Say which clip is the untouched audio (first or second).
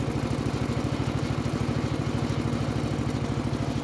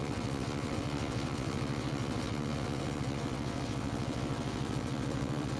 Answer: first